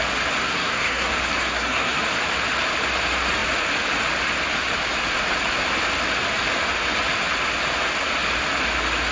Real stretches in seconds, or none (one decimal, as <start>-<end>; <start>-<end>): 0.0-0.4; 1.1-1.5; 2.0-9.1